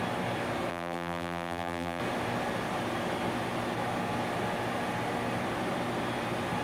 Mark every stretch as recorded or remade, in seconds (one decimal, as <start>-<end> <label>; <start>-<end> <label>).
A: 0.0-0.7 recorded; 0.7-2.0 remade; 2.0-6.6 recorded